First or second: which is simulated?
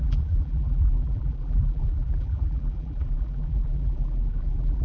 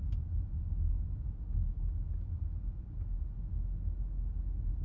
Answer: first